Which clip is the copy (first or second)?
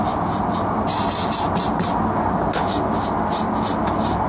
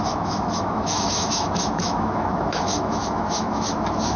second